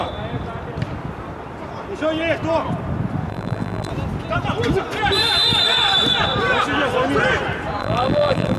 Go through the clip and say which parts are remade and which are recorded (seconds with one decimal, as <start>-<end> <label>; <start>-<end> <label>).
0.0-3.3 recorded; 3.3-3.9 remade; 3.9-7.8 recorded; 7.8-8.6 remade